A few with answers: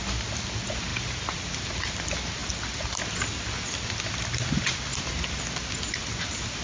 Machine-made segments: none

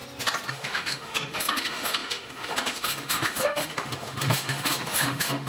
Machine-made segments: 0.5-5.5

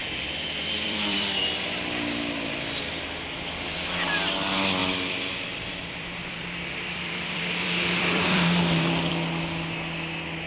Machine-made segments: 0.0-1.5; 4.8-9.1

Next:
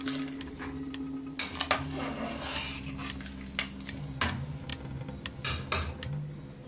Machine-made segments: none